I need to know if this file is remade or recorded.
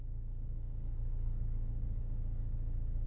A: remade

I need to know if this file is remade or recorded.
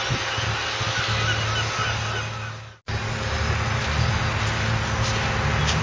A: recorded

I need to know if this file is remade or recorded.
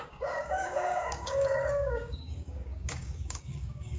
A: remade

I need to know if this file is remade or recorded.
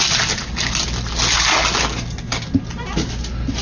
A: recorded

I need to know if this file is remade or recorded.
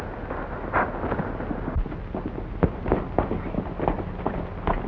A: recorded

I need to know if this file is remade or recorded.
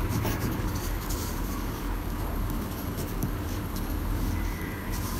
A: remade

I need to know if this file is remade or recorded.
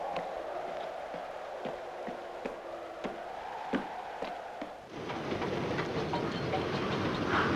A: recorded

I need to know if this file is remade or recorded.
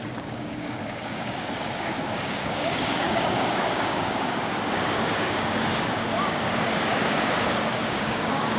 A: remade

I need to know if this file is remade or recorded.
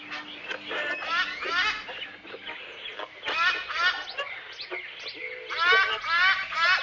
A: recorded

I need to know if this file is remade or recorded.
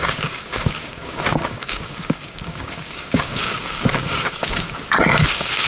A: remade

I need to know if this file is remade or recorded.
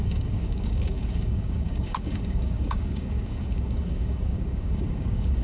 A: remade